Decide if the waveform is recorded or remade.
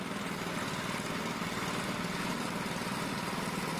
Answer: recorded